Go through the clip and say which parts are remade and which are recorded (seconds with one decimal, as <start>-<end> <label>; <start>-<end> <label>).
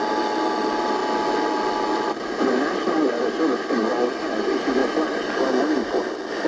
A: 0.0-6.5 recorded